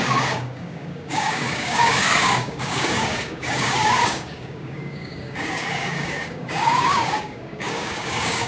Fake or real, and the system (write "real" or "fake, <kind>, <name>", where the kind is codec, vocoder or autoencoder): fake, codec, DAC